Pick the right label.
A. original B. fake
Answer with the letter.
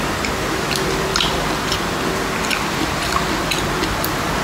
A